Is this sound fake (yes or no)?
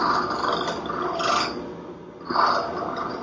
no